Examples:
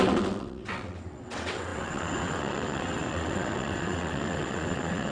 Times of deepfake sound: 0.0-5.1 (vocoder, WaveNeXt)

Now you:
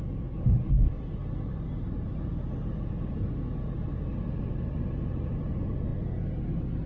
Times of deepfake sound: none

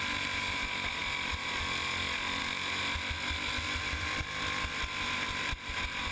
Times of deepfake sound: none

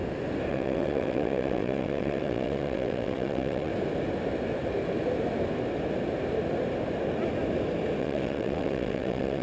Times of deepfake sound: 0.5-3.7 (vocoder, WaveNeXt); 8.0-9.4

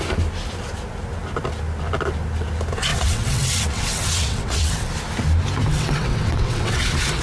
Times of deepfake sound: 2.9-4.9 (vocoder, WaveNeXt); 5.7-6.8